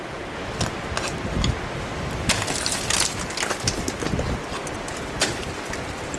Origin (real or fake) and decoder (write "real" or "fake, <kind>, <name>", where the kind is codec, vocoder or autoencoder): real